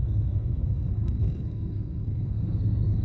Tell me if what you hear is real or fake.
fake